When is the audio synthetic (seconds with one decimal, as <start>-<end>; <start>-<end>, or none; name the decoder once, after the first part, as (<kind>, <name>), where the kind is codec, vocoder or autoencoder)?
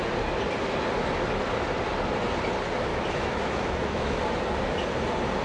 2.9-4.2 (autoencoder, DAC-VAE)